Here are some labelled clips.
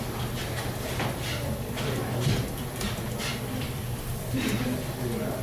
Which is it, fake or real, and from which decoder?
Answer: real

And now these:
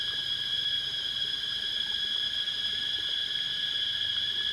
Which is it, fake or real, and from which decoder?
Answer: fake, vocoder, BigVGAN v2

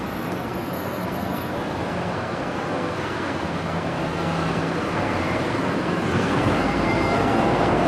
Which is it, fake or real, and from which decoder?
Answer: fake, codec, SNAC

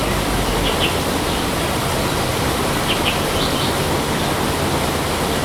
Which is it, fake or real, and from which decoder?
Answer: real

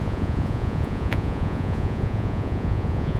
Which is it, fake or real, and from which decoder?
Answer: fake, vocoder, Vocos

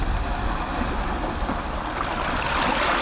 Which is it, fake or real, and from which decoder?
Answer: real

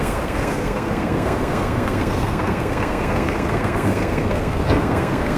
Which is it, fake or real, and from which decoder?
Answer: fake, codec, SNAC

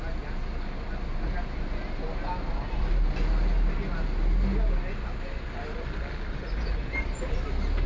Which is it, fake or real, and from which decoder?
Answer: real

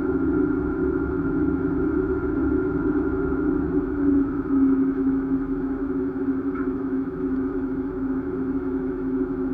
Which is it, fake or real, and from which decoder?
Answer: fake, autoencoder, DAC-VAE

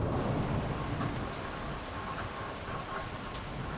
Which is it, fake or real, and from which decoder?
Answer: real